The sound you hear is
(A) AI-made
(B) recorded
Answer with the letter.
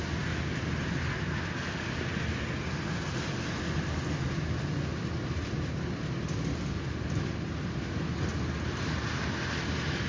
B